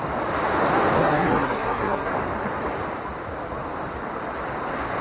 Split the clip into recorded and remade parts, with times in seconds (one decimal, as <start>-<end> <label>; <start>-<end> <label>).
0.0-1.0 recorded; 1.0-2.1 remade; 2.1-5.0 recorded